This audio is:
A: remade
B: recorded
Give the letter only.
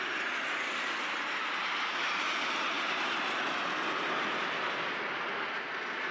B